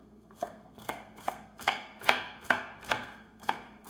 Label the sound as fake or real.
fake